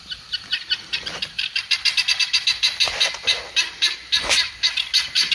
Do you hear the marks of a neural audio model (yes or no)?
no